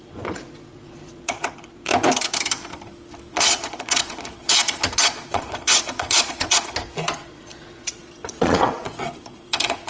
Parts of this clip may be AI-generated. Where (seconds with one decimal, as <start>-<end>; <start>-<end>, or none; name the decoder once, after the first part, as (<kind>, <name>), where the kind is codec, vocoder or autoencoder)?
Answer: 0.0-1.9 (vocoder, Vocos); 3.3-9.9